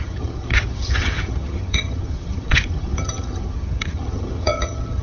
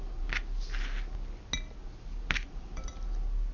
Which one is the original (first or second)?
second